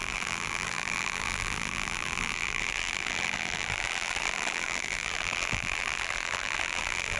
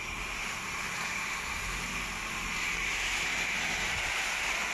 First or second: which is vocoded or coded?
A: first